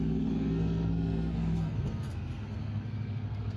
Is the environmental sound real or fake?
fake